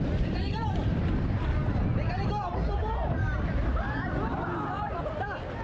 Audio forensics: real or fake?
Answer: fake